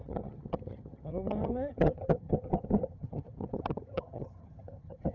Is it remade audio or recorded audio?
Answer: remade